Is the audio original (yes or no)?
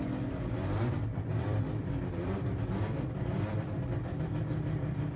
no